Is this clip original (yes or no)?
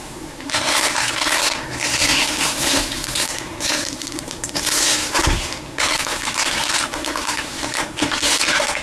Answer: no